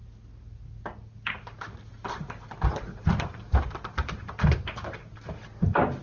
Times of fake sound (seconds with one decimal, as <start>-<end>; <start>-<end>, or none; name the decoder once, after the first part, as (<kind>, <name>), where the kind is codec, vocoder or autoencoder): none